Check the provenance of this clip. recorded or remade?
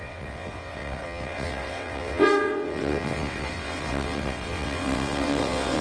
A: remade